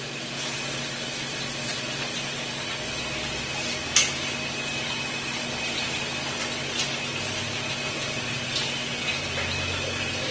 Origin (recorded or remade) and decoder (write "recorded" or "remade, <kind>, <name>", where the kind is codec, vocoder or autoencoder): recorded